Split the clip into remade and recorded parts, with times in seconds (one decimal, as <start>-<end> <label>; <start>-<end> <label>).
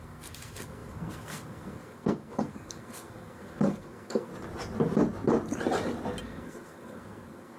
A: 0.0-4.3 remade; 4.3-6.2 recorded; 6.2-7.6 remade